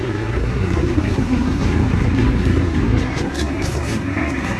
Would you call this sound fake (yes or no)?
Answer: yes